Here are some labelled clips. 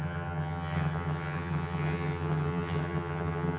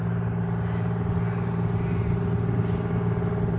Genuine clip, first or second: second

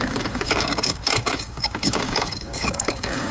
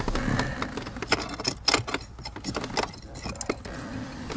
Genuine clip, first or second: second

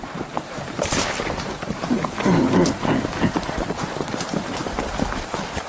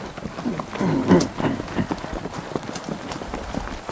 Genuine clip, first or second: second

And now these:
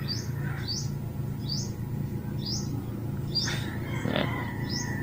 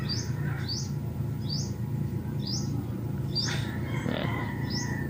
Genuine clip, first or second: first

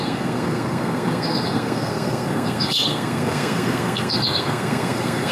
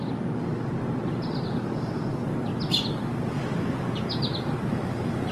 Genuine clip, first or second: second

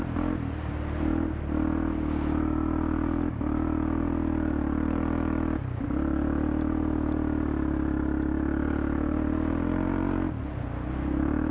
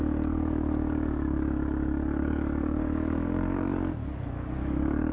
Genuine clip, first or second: first